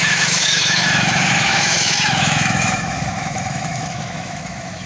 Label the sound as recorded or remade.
remade